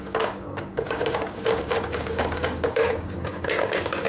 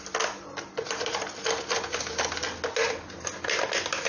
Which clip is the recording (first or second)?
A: second